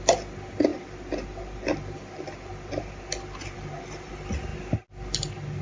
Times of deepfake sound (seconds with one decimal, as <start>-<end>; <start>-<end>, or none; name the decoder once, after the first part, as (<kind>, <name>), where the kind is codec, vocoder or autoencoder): 0.7-4.1 (vocoder, BigVGAN v2)